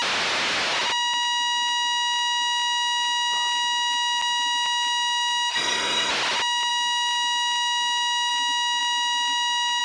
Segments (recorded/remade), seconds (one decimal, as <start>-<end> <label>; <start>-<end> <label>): 0.0-5.5 recorded; 5.5-6.1 remade; 6.1-9.8 recorded

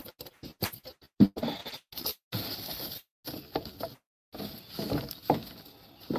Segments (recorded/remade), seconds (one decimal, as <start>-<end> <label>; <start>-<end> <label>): 0.0-6.2 recorded

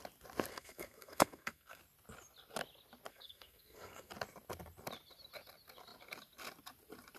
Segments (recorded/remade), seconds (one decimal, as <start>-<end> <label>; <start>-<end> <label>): 0.0-0.5 recorded; 0.5-1.8 remade; 1.8-3.1 recorded; 3.1-4.1 remade; 4.1-7.2 recorded

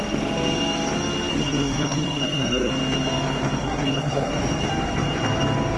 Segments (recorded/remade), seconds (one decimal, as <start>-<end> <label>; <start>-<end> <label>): 0.0-1.3 recorded; 1.3-2.7 remade; 2.7-3.6 recorded; 3.6-4.3 remade; 4.3-5.8 recorded

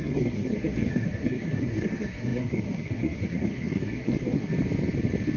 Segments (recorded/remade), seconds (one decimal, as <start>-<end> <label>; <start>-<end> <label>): 0.0-4.5 remade; 4.5-5.4 recorded